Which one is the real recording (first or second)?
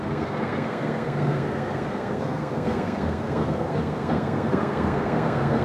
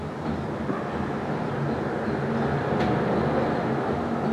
second